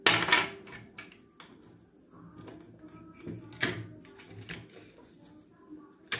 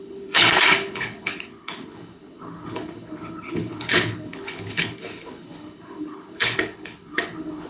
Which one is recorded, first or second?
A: first